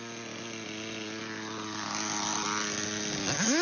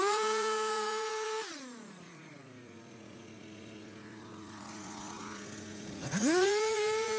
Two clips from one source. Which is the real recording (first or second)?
first